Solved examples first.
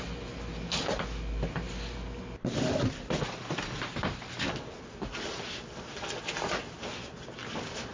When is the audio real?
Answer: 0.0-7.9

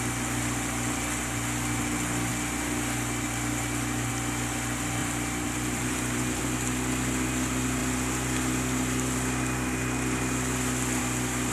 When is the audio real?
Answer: 0.0-5.0; 6.4-11.5

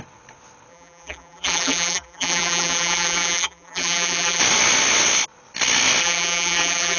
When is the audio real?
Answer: 0.0-0.7; 4.4-6.0